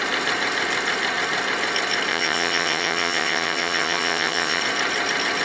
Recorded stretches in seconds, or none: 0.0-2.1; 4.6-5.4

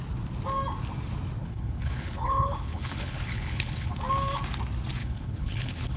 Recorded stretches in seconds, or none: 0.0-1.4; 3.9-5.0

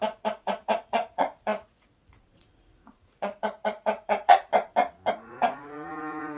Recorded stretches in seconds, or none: 4.5-5.1

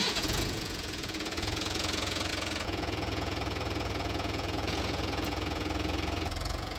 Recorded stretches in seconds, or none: none